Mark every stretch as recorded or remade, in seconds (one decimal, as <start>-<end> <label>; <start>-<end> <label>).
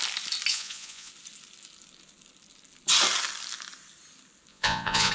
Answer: 0.0-0.5 recorded; 0.5-1.1 remade; 1.1-4.5 recorded; 4.5-5.1 remade